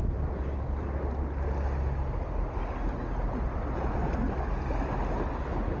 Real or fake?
real